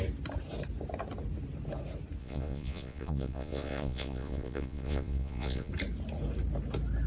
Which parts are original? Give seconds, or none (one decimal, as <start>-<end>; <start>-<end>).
0.0-2.2; 5.7-7.1